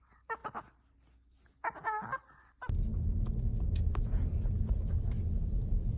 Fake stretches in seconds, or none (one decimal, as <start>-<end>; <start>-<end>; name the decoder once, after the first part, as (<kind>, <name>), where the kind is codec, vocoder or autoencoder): none